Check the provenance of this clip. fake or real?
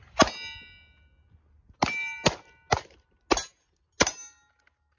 real